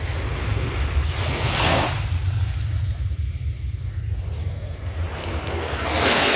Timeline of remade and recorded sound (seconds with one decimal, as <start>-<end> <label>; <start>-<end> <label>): 0.0-5.2 recorded; 5.2-6.4 remade